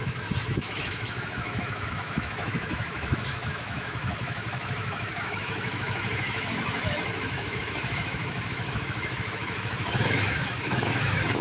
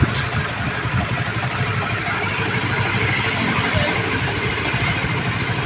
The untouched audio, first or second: second